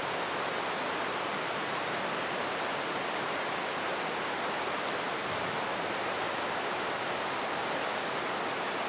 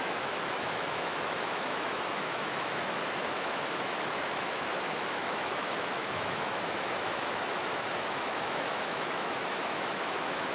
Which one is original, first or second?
first